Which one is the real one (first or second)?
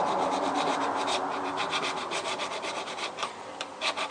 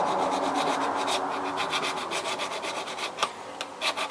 second